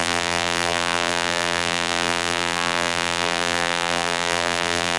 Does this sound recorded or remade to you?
remade